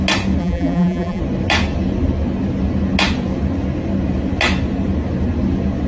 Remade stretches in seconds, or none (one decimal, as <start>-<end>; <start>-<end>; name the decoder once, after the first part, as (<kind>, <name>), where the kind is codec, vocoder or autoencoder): 0.4-1.2 (vocoder, BigVGAN v2)